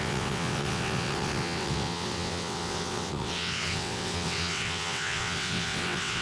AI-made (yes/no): yes